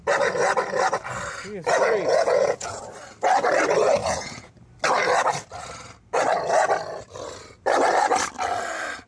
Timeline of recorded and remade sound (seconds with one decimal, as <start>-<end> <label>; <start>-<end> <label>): 0.0-2.1 recorded; 2.1-2.8 remade; 2.8-4.0 recorded; 4.0-4.5 remade; 4.5-9.1 recorded